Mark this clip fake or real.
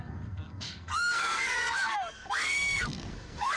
fake